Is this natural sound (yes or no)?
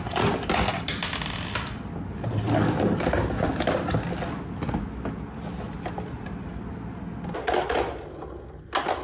yes